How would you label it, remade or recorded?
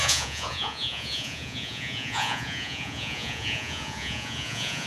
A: remade